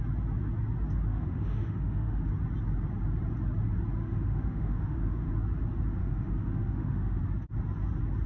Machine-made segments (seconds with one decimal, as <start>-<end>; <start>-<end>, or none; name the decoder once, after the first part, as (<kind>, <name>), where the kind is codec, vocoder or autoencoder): 1.1-2.3 (autoencoder, DAC-VAE); 4.0-5.3; 6.0-7.2